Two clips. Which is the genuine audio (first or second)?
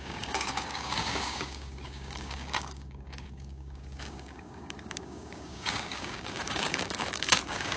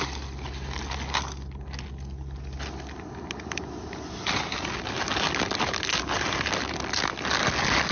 second